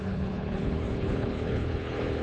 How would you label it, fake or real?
fake